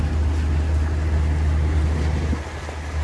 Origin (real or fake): real